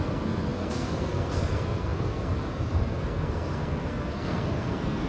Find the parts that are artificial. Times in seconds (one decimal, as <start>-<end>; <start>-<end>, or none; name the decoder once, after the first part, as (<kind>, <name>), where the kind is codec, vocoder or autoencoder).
0.0-5.1 (codec, SNAC)